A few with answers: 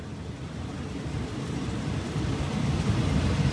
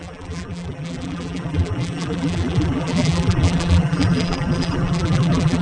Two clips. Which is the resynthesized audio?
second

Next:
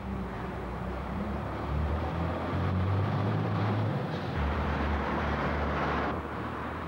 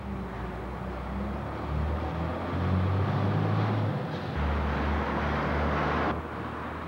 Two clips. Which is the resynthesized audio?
first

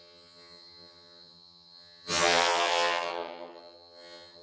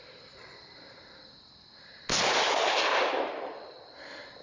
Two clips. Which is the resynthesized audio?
first